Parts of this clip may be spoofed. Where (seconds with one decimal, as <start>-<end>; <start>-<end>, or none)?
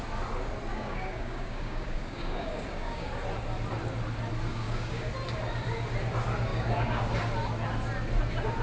0.7-3.1; 4.5-5.1; 6.5-7.0